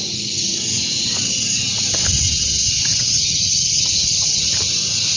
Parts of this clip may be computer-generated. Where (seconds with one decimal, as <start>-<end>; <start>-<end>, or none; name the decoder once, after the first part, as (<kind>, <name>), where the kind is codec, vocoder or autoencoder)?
2.9-4.4 (vocoder, HiFi-GAN)